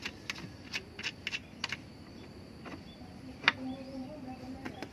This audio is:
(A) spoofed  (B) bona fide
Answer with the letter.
B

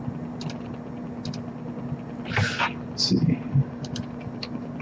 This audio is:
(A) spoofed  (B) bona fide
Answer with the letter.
B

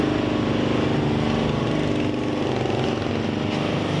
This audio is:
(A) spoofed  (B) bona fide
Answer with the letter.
B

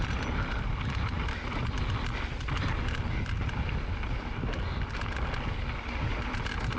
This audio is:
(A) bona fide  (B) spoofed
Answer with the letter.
A